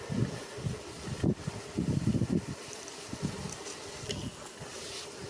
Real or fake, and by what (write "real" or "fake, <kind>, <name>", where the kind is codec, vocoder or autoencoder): real